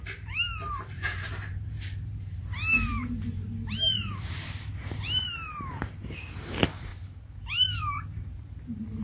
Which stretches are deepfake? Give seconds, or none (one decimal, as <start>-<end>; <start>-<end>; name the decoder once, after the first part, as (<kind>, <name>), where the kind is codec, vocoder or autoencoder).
0.0-9.0 (vocoder, BigVGAN v2)